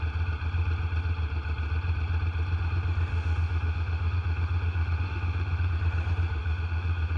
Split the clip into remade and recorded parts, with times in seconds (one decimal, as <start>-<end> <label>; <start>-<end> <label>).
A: 0.0-3.1 recorded; 3.1-5.7 remade; 5.7-6.4 recorded; 6.4-7.2 remade